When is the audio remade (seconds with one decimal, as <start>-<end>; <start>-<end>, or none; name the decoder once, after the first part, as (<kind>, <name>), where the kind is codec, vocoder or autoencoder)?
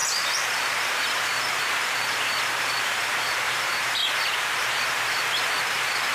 1.0-4.0 (vocoder, BigVGAN v2); 4.6-6.1